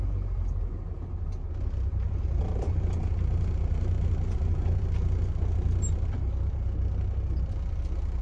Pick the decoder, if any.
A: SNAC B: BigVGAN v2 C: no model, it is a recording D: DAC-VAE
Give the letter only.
C